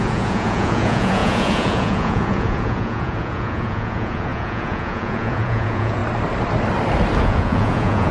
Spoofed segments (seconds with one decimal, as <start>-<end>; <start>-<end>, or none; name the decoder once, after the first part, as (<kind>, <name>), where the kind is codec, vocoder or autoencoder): 0.0-6.0 (vocoder, Vocos); 7.2-8.1